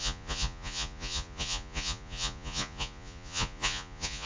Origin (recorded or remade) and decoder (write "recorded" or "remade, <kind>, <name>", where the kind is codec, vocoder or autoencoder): remade, vocoder, Vocos